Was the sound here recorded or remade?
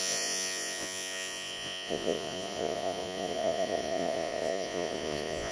remade